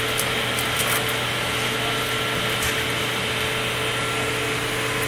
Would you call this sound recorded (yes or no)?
yes